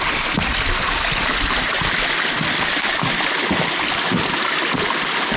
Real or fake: real